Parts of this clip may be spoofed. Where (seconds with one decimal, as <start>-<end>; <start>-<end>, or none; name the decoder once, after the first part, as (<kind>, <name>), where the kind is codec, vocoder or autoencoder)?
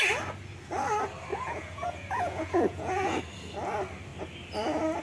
1.3-3.2 (vocoder, Vocos)